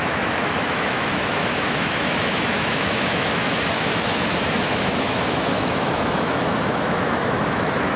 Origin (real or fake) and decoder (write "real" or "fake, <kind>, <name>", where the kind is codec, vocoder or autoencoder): fake, autoencoder, DAC-VAE